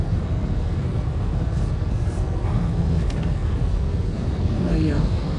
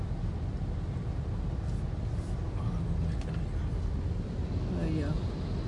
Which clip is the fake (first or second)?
first